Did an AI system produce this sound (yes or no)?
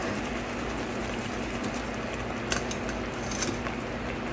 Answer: no